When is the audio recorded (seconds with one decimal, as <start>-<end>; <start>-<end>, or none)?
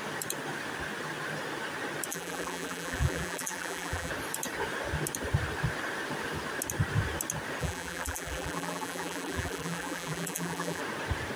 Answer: 0.0-2.1; 4.1-7.6; 10.8-11.4